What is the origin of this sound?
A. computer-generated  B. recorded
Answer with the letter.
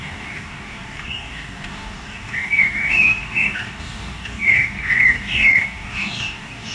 A